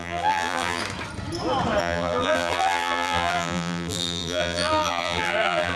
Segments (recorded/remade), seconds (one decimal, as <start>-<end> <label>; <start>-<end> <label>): 0.0-0.8 remade; 0.8-1.8 recorded; 1.8-5.8 remade